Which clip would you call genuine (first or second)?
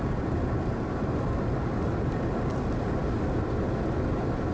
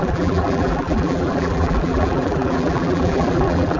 first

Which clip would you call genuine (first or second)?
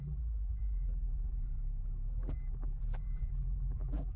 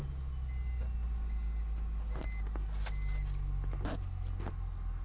second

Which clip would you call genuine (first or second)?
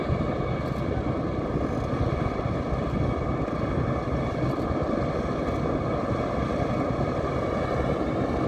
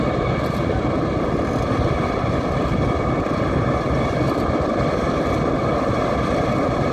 first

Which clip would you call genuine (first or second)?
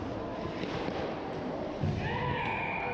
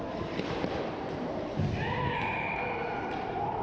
first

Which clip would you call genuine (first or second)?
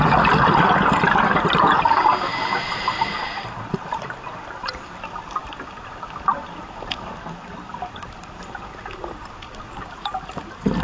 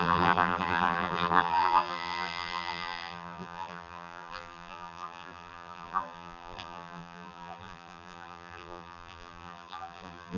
first